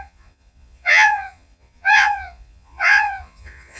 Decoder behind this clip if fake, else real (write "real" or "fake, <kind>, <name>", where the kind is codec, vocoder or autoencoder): fake, vocoder, Vocos